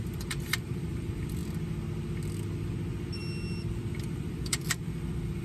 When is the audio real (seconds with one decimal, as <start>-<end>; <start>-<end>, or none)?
1.4-3.7